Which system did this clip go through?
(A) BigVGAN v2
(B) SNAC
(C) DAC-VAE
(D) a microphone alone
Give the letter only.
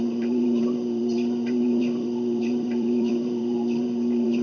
A